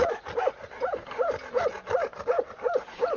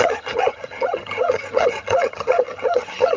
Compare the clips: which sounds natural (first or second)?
first